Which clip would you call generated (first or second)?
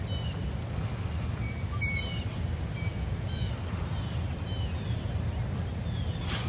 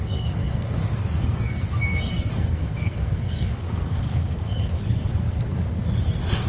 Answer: second